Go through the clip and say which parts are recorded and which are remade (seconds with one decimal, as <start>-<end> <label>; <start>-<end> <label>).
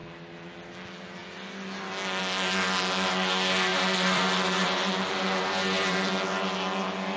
0.0-3.7 recorded; 3.7-6.1 remade; 6.1-7.2 recorded